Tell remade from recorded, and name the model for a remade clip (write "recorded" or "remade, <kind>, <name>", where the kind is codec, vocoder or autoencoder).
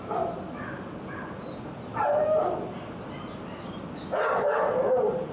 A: recorded